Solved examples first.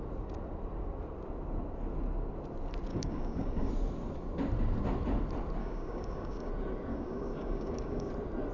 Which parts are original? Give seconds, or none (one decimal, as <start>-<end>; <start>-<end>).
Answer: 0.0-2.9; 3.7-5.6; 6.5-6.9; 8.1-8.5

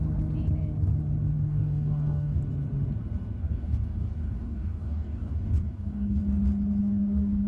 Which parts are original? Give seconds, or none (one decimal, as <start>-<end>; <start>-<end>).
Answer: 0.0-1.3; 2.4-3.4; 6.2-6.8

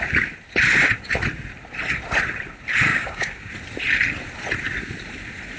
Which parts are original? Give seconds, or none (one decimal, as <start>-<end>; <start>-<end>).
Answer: 0.0-2.9; 3.5-5.6